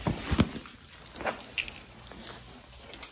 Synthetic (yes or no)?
no